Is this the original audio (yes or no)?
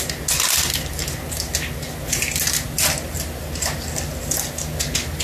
yes